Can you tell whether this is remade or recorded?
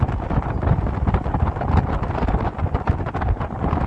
recorded